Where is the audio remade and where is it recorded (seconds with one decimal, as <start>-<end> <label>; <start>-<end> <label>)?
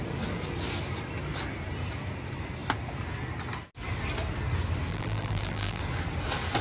0.0-4.9 recorded; 4.9-5.8 remade; 5.8-6.6 recorded